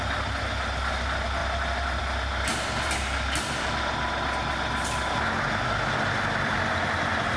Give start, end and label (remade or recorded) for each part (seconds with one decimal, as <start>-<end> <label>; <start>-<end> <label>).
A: 0.0-7.4 recorded